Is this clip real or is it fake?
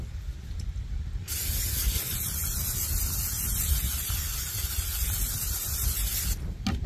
real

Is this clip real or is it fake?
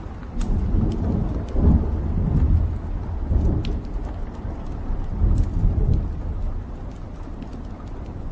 real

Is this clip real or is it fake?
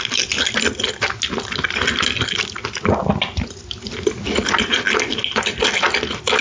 real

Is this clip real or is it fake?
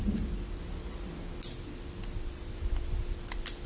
real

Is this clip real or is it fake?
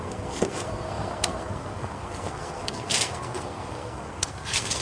fake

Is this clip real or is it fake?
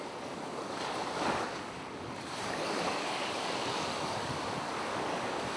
fake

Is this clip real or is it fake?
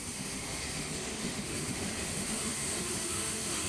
fake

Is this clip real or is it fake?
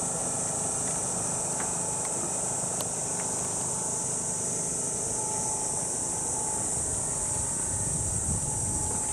real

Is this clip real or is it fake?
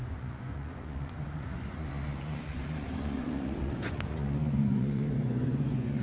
fake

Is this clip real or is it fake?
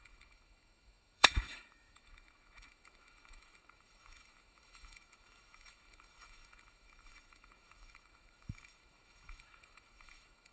fake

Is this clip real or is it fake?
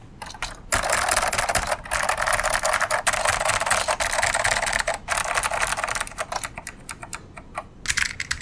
real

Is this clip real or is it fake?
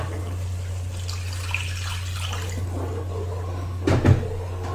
real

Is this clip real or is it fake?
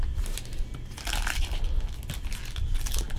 real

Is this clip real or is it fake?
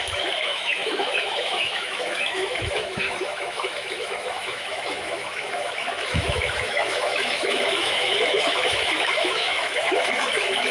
fake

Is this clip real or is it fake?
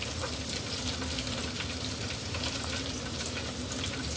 fake